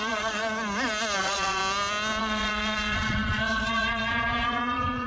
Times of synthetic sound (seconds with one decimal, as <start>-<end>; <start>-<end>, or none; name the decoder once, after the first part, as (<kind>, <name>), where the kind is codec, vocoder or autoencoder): 0.0-0.4 (vocoder, Vocos); 1.2-1.6; 2.2-5.1